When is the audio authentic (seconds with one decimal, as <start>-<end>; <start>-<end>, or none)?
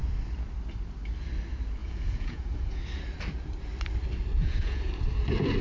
0.0-1.8; 2.8-4.4; 4.9-5.6